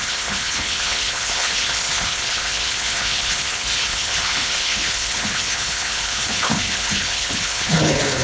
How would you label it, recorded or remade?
remade